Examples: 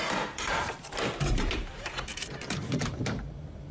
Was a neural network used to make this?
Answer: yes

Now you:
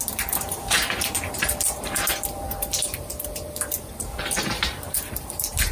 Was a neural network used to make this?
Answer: yes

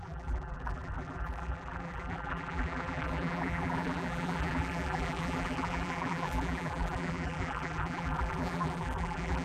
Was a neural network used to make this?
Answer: yes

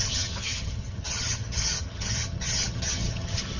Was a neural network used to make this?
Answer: yes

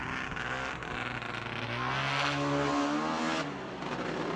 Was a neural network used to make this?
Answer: no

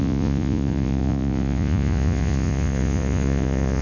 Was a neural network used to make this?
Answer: yes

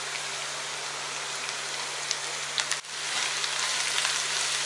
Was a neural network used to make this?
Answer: no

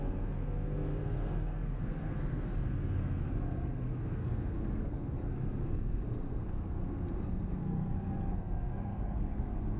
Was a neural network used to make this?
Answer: yes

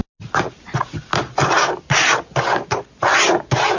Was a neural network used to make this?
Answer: no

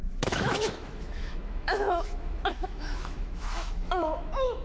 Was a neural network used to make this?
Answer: yes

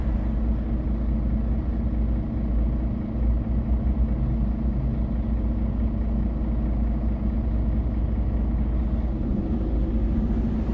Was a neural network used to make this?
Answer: no